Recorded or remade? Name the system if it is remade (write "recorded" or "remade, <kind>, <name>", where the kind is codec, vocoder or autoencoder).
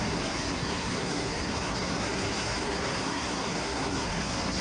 remade, codec, SNAC